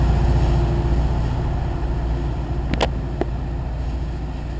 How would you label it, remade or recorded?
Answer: recorded